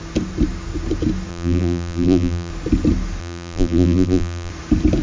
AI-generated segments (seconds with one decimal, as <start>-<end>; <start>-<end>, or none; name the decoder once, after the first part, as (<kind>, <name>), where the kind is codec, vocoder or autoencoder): 1.3-2.5 (vocoder, BigVGAN v2); 3.2-4.5